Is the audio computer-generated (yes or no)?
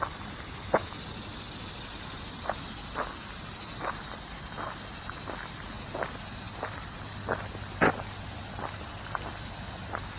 no